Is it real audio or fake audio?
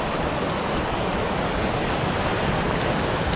real